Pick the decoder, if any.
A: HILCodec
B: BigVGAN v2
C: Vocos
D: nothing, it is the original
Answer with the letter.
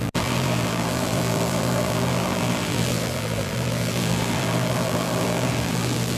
B